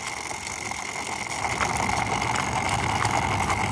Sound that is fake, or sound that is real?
real